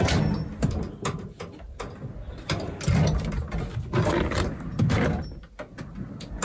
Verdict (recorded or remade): recorded